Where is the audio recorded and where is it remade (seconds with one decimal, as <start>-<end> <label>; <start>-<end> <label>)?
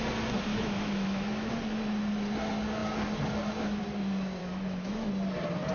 0.0-0.5 recorded; 0.5-1.5 remade; 1.5-4.4 recorded; 4.4-5.1 remade; 5.1-5.7 recorded